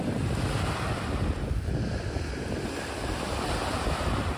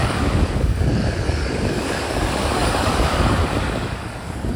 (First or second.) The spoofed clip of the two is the second